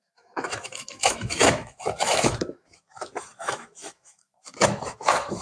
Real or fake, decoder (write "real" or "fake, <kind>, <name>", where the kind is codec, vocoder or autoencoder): fake, autoencoder, DAC-VAE